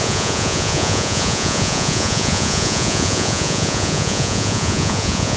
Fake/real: fake